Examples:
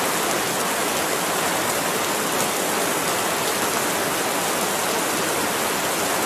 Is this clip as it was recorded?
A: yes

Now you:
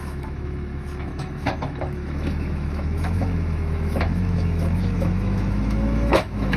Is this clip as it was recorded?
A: no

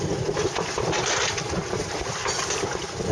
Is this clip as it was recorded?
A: yes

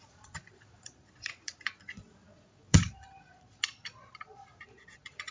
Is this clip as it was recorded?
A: no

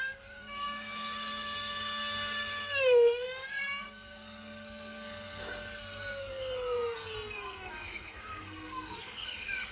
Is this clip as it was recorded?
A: no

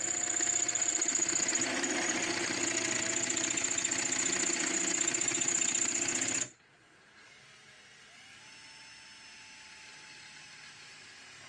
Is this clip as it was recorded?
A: yes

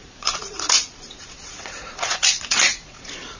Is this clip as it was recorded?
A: no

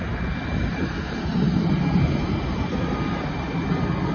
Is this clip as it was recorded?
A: yes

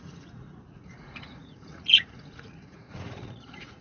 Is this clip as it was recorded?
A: no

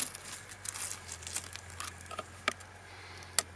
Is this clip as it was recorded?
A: yes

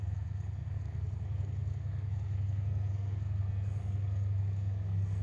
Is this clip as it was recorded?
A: no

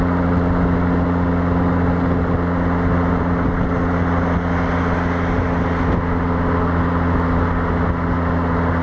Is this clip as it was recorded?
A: yes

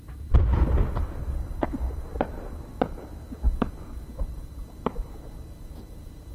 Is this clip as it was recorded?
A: yes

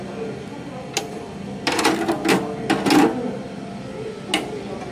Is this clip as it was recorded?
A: yes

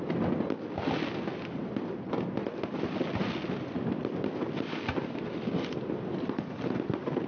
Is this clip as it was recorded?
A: yes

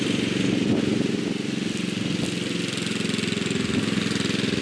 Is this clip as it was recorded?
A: yes